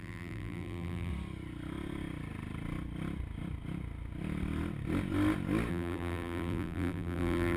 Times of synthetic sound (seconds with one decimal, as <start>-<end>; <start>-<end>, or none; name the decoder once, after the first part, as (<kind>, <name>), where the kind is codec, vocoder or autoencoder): 0.0-1.1 (vocoder, BigVGAN v2); 5.7-7.6